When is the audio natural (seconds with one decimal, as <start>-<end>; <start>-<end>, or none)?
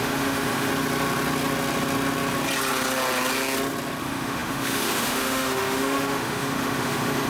0.7-4.0